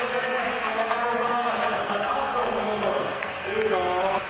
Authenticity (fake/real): fake